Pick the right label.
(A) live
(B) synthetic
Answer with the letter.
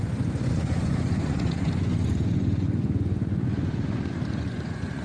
B